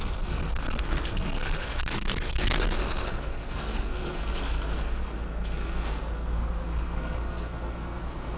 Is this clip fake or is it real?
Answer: fake